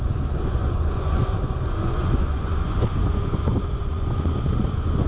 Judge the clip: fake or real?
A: fake